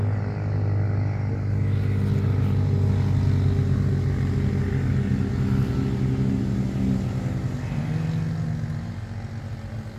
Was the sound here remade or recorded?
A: recorded